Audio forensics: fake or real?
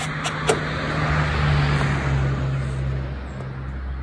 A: real